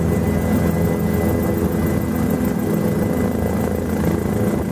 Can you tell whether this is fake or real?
real